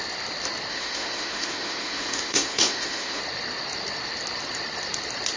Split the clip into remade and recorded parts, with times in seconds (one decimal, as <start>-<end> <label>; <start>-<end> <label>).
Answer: 0.0-0.7 recorded; 0.7-3.2 remade; 3.2-5.4 recorded